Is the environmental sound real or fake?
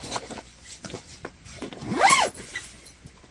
fake